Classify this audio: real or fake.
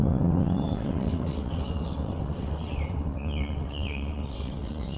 fake